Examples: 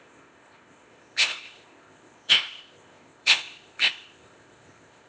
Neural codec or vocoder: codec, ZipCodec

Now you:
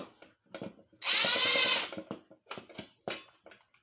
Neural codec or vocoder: none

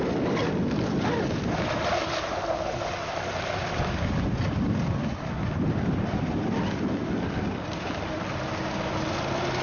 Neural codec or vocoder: none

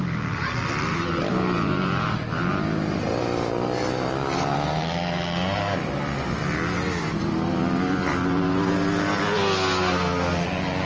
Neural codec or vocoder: none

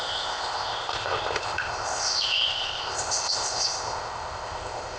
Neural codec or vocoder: codec, ZipCodec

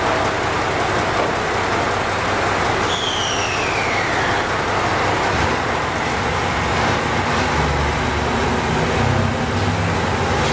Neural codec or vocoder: none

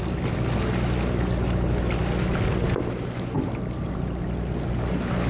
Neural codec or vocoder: none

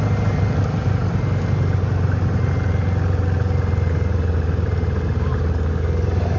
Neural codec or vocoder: none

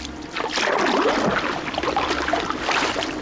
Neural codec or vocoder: none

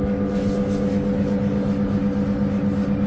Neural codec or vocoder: none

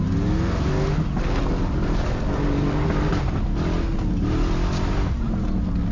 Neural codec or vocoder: none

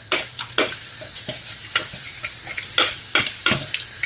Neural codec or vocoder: none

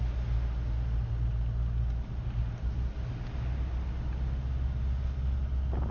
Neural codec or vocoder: none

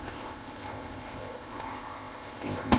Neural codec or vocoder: codec, ZipCodec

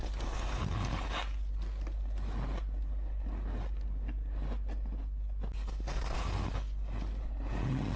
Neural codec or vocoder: none